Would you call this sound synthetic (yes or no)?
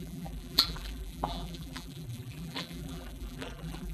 yes